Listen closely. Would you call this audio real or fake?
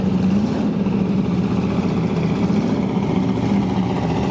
fake